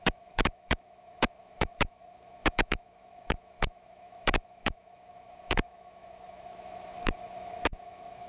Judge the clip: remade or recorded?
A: remade